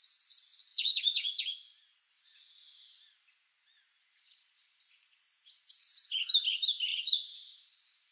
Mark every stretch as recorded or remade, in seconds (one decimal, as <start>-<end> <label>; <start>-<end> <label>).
0.0-0.7 recorded; 0.7-2.0 remade; 2.0-4.0 recorded; 4.0-6.2 remade; 6.2-6.9 recorded; 6.9-8.1 remade

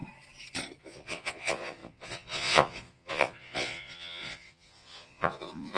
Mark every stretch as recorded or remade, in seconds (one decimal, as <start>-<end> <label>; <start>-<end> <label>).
0.0-0.8 recorded; 0.8-5.8 remade

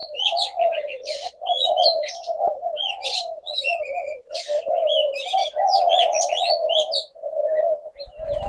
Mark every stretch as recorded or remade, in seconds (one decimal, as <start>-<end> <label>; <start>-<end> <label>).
0.0-4.4 remade; 4.4-5.4 recorded; 5.4-6.7 remade; 6.7-8.5 recorded